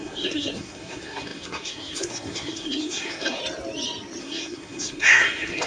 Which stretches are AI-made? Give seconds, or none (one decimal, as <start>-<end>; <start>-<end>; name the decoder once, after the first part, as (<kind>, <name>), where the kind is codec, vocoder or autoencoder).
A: 0.0-3.4 (codec, SNAC); 4.2-5.7